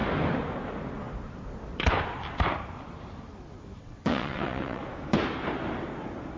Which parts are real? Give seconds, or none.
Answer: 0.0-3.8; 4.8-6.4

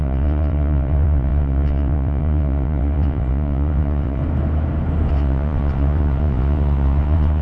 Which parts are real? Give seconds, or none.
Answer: 4.2-5.1

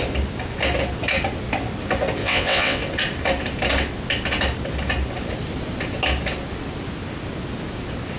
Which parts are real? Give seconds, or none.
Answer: 0.0-2.2; 2.8-8.2

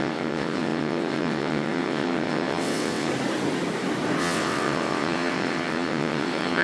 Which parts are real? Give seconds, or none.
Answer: 3.1-4.2

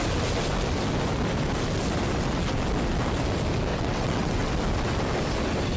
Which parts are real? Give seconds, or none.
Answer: 0.0-3.7; 4.5-5.8